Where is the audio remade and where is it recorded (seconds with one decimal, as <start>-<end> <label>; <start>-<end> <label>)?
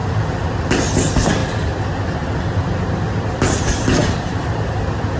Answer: 0.0-0.6 remade; 0.6-4.0 recorded; 4.0-4.8 remade; 4.8-5.2 recorded